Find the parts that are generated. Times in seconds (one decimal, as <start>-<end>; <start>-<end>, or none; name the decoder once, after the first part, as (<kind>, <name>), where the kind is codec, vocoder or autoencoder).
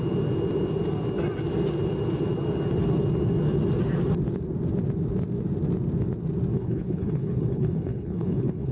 6.5-8.7 (codec, HILCodec)